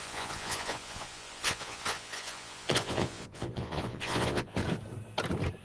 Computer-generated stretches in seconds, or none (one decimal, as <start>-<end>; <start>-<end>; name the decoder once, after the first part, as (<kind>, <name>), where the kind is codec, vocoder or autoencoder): 0.0-4.6 (vocoder, Vocos)